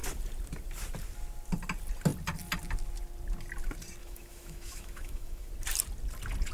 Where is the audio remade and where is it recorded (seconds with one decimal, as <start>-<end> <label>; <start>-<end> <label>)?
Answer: 0.0-4.0 recorded; 4.0-5.5 remade; 5.5-6.5 recorded